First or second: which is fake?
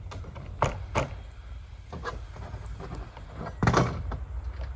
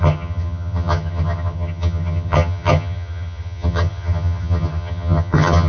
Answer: second